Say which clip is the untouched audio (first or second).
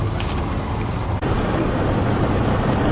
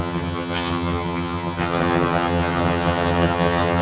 first